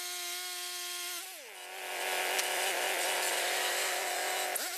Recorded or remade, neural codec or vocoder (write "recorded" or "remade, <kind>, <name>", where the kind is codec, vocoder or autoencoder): recorded